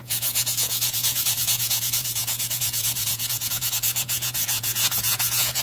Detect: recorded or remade remade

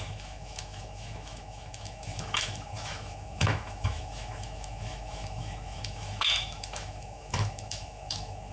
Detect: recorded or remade remade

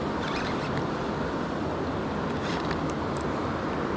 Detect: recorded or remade recorded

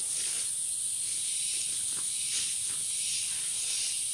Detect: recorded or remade recorded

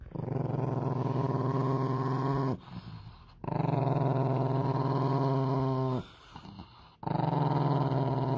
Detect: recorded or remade recorded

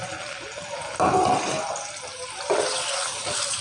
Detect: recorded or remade recorded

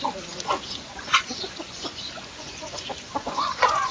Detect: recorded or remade remade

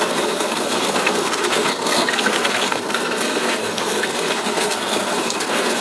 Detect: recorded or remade remade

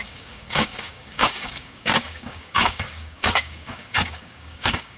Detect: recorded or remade remade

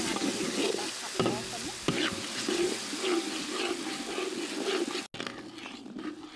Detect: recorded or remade recorded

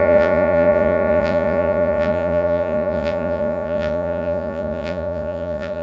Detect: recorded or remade remade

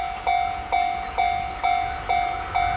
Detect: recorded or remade recorded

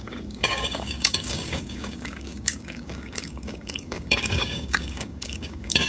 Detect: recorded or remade remade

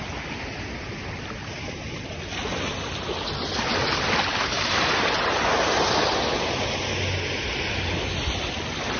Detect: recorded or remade recorded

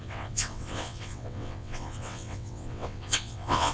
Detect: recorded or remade remade